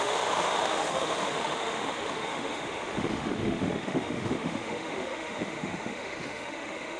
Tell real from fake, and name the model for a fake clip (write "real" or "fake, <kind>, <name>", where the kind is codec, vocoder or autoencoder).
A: fake, autoencoder, DAC-VAE